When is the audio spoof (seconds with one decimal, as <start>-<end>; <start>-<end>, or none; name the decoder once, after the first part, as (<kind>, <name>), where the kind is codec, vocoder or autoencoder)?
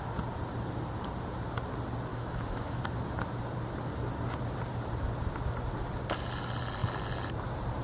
2.1-2.8 (autoencoder, DAC-VAE)